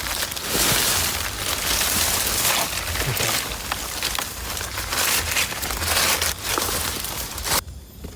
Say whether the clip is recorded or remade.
recorded